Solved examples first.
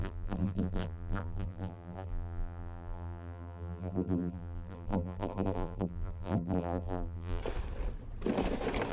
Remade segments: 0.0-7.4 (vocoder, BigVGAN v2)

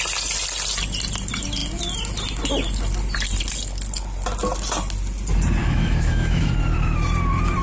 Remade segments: 5.6-6.5 (autoencoder, DAC-VAE)

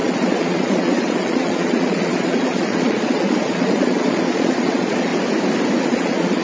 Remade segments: 0.0-5.1 (vocoder, Vocos); 5.8-6.4